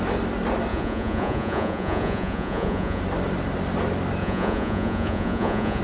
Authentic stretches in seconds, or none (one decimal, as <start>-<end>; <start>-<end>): 0.0-0.7; 3.0-4.2

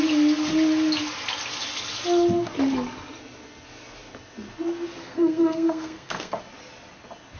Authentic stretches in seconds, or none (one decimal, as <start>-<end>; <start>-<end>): 0.0-5.0; 6.4-7.4